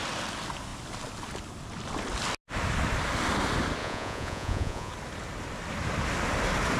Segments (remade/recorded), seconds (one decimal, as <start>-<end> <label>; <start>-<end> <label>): 0.0-3.8 recorded; 3.8-4.9 remade; 4.9-6.8 recorded